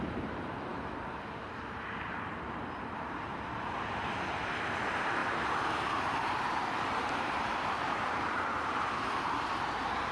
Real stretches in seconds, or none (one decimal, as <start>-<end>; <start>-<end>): none